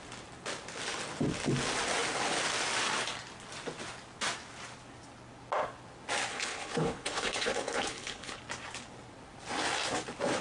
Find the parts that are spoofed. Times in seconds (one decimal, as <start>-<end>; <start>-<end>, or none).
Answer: 6.3-8.4